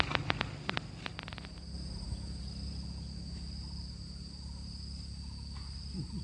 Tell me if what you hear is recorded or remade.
recorded